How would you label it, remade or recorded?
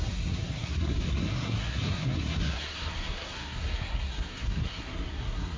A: remade